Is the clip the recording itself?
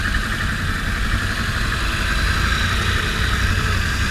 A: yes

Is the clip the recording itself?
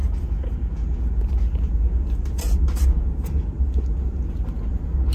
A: yes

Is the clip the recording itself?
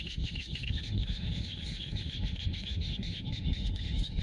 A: no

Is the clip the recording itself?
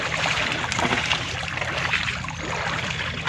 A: yes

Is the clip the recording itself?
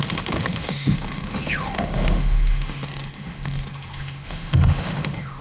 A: no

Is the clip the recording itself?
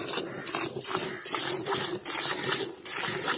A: yes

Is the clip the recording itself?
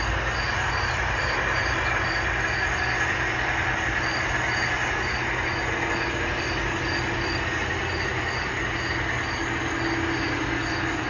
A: yes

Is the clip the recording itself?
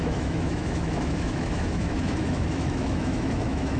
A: no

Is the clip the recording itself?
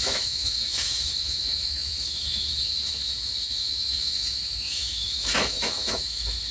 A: no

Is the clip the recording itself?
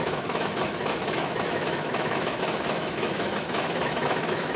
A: no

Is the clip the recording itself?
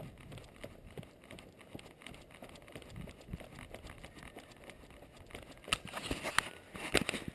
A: yes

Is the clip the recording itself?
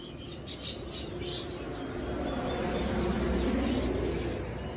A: yes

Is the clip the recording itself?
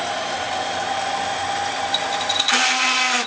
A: yes